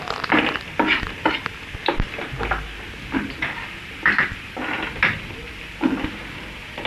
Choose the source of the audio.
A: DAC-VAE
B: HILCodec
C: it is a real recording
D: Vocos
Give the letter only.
C